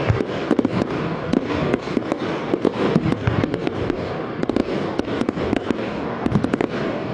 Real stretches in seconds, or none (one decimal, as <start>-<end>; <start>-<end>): none